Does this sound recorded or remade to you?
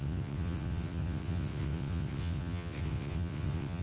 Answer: remade